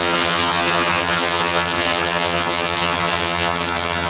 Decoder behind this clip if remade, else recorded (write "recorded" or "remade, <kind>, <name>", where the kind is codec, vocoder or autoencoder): remade, vocoder, HiFi-GAN